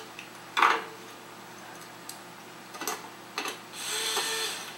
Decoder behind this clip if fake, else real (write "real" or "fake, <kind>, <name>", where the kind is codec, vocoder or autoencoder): real